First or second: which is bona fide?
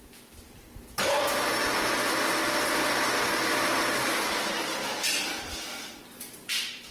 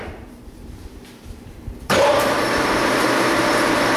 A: first